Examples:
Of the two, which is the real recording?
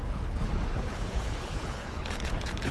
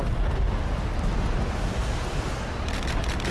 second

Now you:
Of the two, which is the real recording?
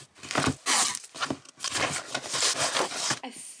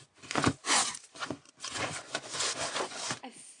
first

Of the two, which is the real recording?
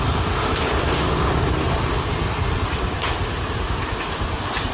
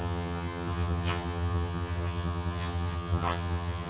first